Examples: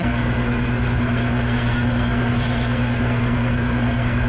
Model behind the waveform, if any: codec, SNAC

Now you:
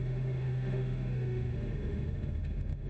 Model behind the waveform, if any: autoencoder, DAC-VAE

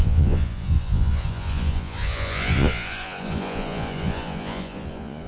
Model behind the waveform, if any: vocoder, Vocos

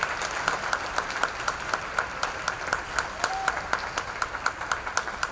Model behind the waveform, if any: none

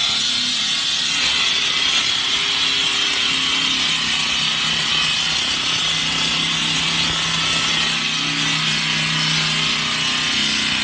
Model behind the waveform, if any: none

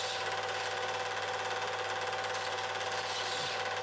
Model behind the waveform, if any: none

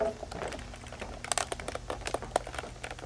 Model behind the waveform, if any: none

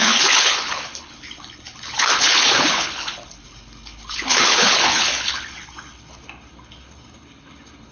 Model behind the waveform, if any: codec, HILCodec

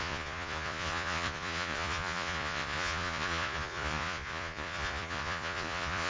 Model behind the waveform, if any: vocoder, Vocos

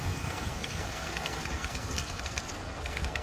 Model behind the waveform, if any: codec, SNAC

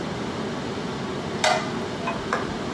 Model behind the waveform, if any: none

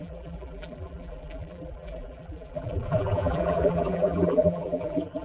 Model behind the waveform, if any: vocoder, BigVGAN v2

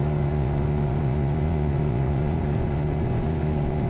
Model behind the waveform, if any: vocoder, Vocos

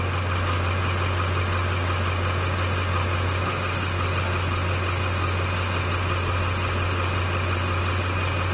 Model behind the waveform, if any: none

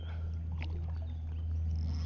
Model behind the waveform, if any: none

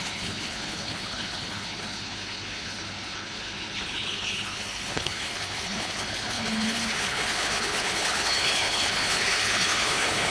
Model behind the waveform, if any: codec, HILCodec